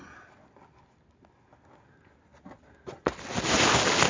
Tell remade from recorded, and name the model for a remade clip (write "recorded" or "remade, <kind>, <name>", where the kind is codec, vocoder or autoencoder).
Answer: recorded